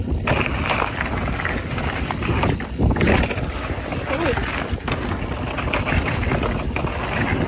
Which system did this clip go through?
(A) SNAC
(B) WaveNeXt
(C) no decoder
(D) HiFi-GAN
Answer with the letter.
C